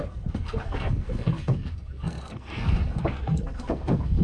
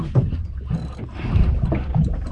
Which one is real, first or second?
second